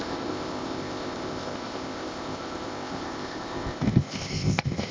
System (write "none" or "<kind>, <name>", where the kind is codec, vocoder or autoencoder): codec, ZipCodec